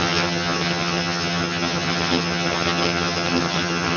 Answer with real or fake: fake